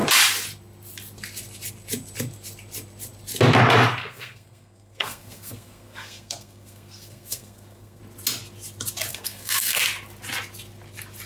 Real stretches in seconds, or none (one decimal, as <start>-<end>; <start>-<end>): 0.0-4.0; 8.0-9.1; 9.8-11.3